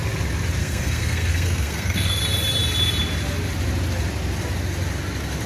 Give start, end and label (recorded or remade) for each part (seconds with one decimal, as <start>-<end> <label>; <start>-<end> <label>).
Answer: 0.0-0.6 recorded; 0.6-2.2 remade; 2.2-5.5 recorded